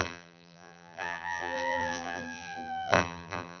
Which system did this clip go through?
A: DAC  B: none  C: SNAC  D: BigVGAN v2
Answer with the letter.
D